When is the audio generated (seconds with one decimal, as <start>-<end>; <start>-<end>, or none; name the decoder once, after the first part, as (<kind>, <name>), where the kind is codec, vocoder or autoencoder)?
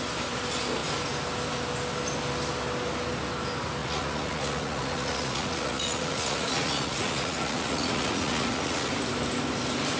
3.8-8.9 (vocoder, Vocos)